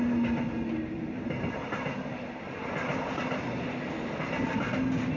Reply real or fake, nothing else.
real